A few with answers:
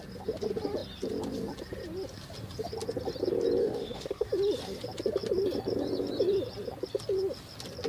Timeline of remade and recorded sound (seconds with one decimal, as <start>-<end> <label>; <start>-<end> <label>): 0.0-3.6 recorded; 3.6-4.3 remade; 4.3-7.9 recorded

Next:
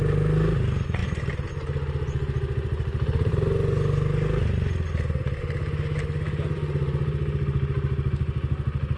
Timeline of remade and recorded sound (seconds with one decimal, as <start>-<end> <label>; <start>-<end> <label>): 0.0-9.0 recorded

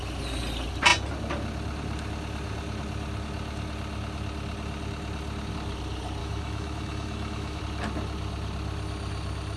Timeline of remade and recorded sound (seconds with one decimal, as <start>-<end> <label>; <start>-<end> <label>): 0.0-6.2 recorded; 6.2-7.6 remade; 7.6-9.6 recorded

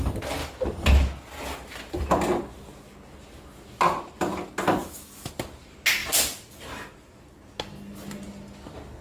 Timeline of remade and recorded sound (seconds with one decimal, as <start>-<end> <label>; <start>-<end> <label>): 0.0-4.8 recorded; 4.8-5.3 remade; 5.3-9.0 recorded

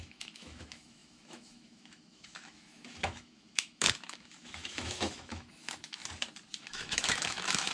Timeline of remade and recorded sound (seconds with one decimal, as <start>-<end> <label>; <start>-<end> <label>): 0.0-6.0 remade; 6.0-6.6 recorded; 6.6-7.7 remade